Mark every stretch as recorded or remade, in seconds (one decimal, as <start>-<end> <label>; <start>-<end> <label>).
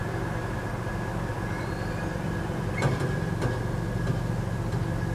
0.0-1.3 recorded; 1.3-3.0 remade; 3.0-5.1 recorded